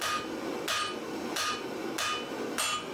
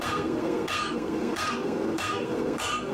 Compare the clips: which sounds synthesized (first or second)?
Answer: second